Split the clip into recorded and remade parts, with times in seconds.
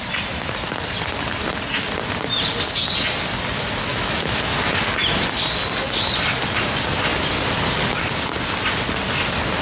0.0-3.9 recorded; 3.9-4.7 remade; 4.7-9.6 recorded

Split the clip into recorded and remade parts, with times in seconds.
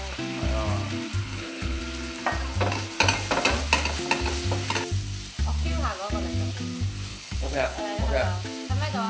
0.0-1.2 recorded; 1.2-1.8 remade; 1.8-7.1 recorded; 7.1-7.8 remade; 7.8-9.1 recorded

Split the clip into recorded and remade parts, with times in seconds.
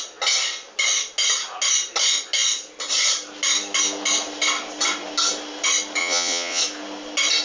0.0-6.0 recorded; 6.0-6.6 remade; 6.6-7.4 recorded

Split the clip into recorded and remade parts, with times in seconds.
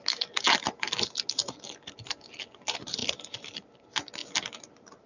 0.0-5.1 recorded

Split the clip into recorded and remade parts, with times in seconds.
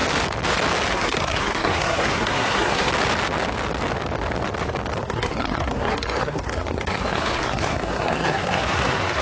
0.0-0.9 recorded; 0.9-2.9 remade; 2.9-5.0 recorded; 5.0-9.2 remade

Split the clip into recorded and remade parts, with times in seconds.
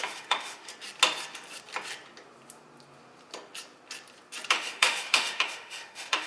0.0-0.7 remade; 0.7-4.5 recorded; 4.5-6.3 remade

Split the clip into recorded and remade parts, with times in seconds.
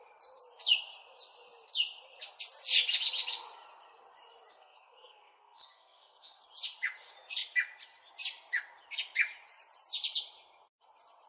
0.0-4.5 recorded; 4.5-6.4 remade; 6.4-11.3 recorded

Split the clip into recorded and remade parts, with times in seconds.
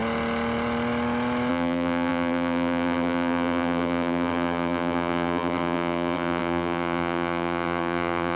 0.0-1.5 recorded; 1.5-8.4 remade